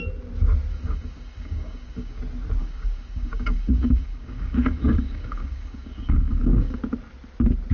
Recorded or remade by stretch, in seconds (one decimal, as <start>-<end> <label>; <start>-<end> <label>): 0.0-0.7 recorded; 0.7-2.2 remade; 2.2-2.6 recorded; 2.6-6.8 remade; 6.8-7.7 recorded